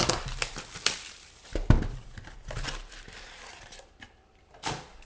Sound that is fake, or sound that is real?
real